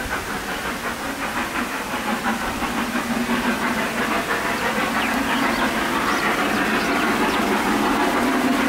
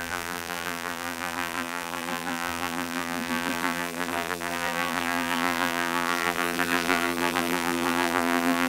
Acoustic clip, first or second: first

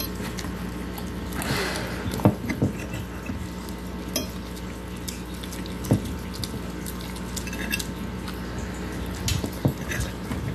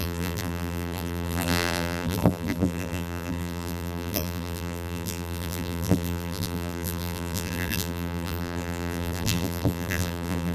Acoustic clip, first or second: first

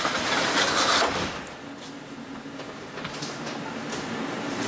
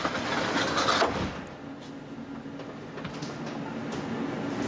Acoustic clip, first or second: second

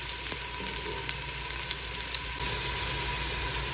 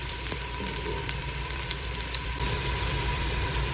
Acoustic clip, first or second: first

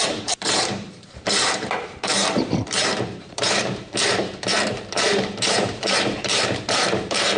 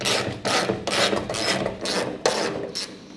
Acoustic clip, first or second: second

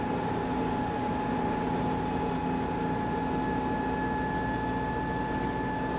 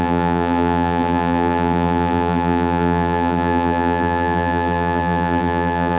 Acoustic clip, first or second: first